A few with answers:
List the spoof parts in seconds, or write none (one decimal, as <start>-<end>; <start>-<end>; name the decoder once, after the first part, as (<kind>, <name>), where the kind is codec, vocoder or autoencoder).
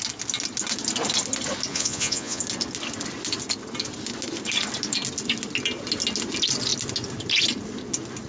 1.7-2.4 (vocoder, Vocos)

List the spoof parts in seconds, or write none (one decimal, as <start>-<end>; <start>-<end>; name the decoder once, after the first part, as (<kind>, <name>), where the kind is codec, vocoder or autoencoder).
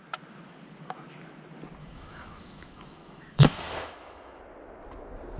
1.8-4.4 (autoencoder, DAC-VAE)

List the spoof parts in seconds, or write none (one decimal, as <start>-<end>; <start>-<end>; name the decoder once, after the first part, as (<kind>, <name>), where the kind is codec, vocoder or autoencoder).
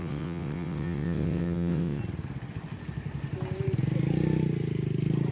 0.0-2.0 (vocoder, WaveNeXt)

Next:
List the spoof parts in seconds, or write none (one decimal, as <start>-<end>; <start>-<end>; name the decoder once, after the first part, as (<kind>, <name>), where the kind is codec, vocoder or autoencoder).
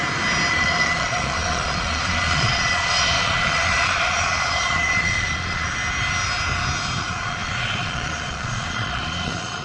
0.5-5.8 (vocoder, Vocos); 7.0-9.6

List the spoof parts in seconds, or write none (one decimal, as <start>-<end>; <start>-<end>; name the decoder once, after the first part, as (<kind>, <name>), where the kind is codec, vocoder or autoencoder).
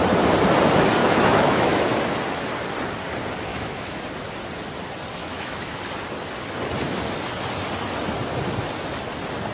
1.0-2.0 (autoencoder, DAC-VAE); 3.5-4.0; 5.2-5.8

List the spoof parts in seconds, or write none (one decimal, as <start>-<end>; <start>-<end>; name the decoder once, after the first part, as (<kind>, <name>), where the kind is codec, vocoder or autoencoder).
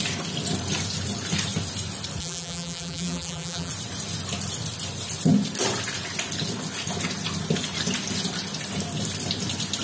2.2-3.7 (vocoder, BigVGAN v2)